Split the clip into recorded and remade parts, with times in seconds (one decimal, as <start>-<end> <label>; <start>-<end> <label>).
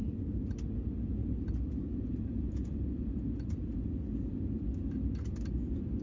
0.0-1.2 recorded; 1.2-2.7 remade; 2.7-6.0 recorded